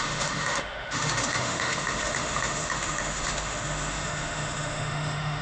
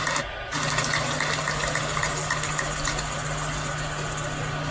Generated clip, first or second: first